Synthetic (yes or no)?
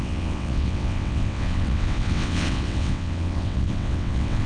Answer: yes